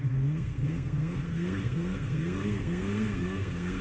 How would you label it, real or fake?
fake